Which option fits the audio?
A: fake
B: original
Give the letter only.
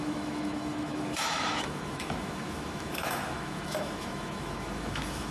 A